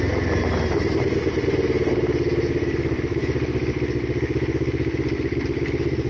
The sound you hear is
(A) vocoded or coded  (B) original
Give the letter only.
B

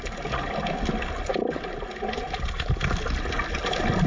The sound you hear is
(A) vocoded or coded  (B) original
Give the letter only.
B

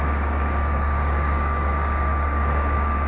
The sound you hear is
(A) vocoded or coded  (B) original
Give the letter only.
A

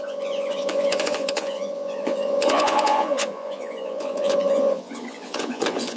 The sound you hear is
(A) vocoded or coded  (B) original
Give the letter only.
A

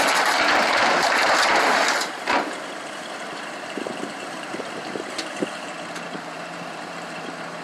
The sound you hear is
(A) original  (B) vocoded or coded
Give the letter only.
B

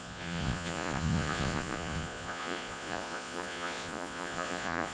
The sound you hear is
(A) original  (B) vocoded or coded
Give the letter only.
B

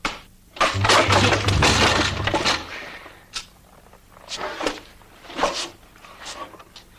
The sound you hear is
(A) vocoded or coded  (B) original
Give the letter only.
B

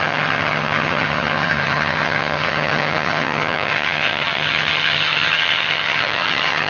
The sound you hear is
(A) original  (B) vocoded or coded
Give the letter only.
B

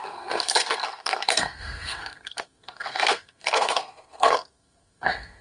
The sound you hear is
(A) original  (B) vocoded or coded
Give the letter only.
B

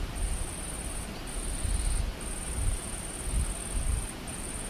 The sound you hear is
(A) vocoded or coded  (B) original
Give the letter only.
B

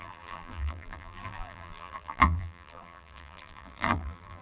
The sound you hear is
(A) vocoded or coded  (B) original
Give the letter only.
A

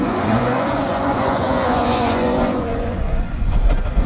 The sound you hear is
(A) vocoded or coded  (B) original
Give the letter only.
A